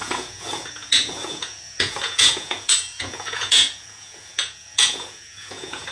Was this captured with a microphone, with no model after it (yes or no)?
no